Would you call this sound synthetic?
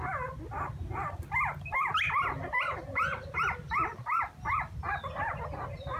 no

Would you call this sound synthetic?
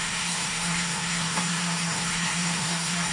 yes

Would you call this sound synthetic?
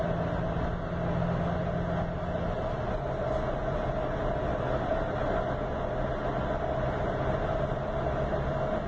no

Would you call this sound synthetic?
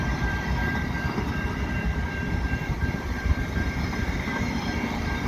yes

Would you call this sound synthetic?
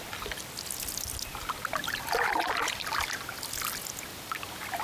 no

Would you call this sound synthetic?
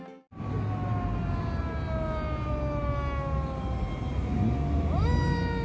no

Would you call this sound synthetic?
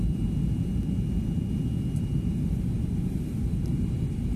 no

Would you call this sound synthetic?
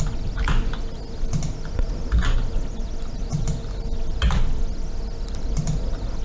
no